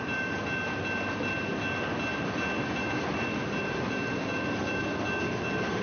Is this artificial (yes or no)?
no